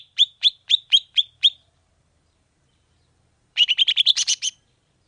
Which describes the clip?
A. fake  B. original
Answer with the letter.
A